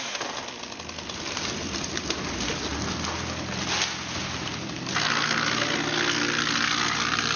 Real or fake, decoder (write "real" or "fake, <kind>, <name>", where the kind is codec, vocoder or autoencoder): real